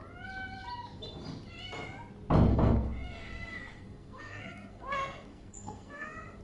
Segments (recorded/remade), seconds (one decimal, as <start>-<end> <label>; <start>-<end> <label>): 0.0-2.5 recorded; 2.5-6.4 remade